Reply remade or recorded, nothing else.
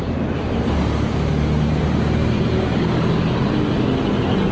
recorded